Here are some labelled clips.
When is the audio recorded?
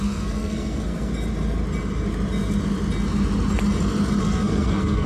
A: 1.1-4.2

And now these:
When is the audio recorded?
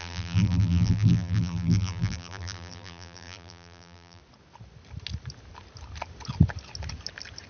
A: 4.2-7.5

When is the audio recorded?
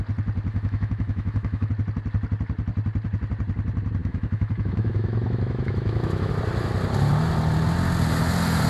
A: 0.0-0.5; 1.7-4.0; 6.3-8.7